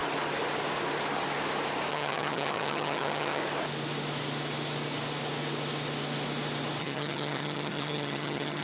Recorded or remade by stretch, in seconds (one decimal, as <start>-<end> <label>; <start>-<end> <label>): 0.0-1.9 recorded; 1.9-3.4 remade; 3.4-6.8 recorded; 6.8-8.6 remade